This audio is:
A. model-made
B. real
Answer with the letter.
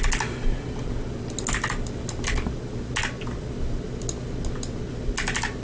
B